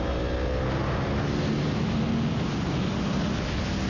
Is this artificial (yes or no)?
no